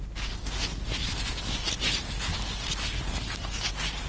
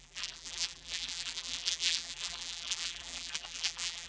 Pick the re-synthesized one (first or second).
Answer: second